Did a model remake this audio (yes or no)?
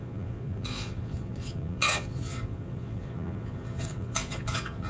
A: yes